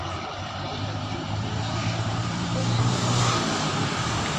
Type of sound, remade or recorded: remade